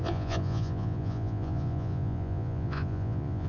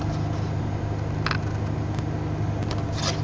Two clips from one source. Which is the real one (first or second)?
second